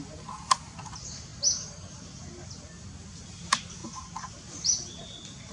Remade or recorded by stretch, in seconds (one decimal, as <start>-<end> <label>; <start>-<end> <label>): 0.0-5.5 recorded